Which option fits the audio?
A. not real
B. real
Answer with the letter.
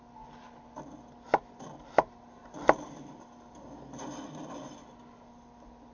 B